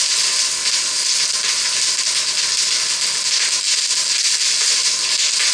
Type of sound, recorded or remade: recorded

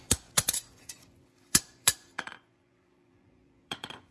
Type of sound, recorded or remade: remade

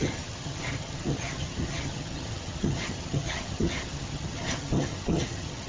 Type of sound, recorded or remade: remade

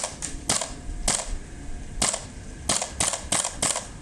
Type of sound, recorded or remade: recorded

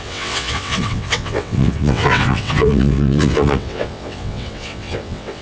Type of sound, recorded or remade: remade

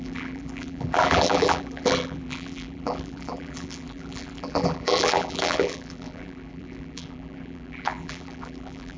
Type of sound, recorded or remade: remade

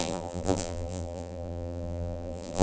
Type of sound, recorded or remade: remade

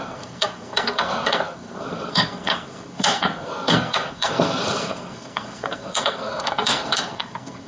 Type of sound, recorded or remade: remade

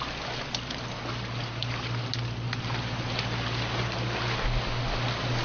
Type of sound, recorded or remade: recorded